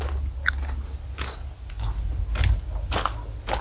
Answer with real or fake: real